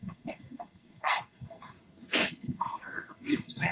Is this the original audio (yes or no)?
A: no